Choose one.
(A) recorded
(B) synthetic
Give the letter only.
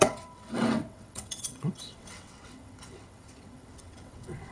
B